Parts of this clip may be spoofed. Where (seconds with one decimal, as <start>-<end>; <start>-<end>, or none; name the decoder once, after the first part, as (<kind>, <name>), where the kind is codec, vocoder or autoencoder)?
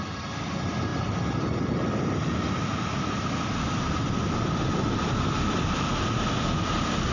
none